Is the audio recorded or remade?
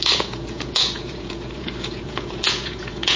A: remade